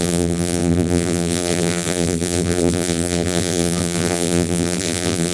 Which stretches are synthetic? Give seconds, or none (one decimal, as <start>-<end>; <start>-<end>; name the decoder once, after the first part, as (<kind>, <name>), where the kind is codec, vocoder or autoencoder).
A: 0.0-5.3 (vocoder, BigVGAN v2)